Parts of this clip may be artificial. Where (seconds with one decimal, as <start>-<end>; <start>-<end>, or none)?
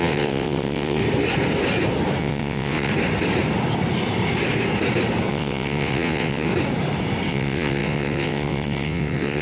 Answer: 0.0-1.0; 2.2-2.9; 5.3-6.5; 7.3-9.4